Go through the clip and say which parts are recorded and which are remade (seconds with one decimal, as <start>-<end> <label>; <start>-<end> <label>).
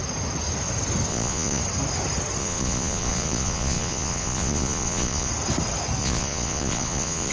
0.0-1.1 recorded; 1.1-1.6 remade; 1.6-2.4 recorded; 2.4-5.3 remade; 5.3-6.0 recorded; 6.0-7.3 remade